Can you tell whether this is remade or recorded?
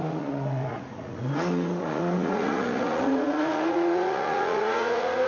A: remade